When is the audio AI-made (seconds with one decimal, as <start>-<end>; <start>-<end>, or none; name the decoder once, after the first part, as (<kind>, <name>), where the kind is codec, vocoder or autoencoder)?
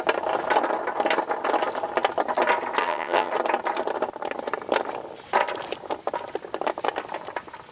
2.8-3.3 (vocoder, HiFi-GAN)